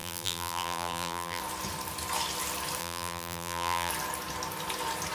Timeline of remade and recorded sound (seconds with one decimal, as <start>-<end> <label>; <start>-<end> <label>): 0.0-1.4 remade; 1.4-2.8 recorded; 2.8-3.9 remade; 3.9-5.1 recorded